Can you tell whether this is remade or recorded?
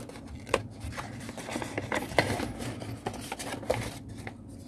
recorded